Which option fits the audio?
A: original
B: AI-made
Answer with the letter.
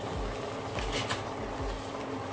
A